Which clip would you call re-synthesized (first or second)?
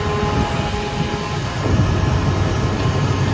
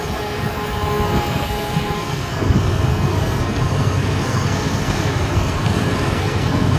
second